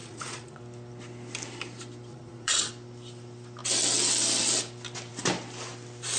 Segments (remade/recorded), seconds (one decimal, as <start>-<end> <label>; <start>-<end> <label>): 0.0-0.6 remade; 0.6-2.1 recorded; 2.1-2.7 remade; 2.7-6.2 recorded